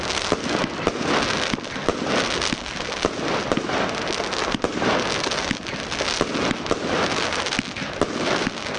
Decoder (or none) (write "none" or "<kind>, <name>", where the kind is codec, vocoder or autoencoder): none